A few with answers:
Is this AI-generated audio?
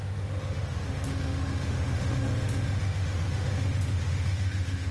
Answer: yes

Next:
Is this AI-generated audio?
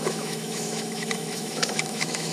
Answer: yes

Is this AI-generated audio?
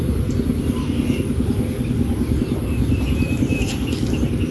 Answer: no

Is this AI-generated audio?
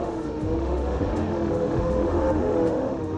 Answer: yes